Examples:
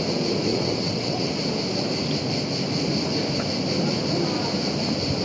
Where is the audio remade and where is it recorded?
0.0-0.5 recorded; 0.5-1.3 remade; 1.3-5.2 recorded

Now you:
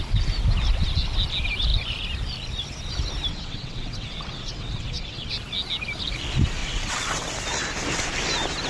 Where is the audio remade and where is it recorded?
0.0-3.3 recorded; 3.3-5.3 remade; 5.3-6.6 recorded; 6.6-7.3 remade; 7.3-8.7 recorded

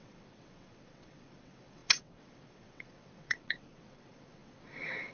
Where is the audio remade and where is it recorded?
0.0-5.1 remade

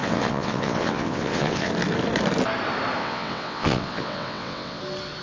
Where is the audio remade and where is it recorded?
0.0-1.7 remade; 1.7-3.0 recorded; 3.0-4.8 remade; 4.8-5.2 recorded